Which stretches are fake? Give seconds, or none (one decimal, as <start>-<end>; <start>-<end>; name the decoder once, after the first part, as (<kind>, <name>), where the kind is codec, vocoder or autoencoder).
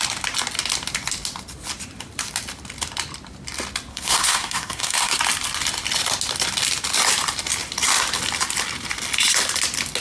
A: 3.9-5.2 (codec, SNAC)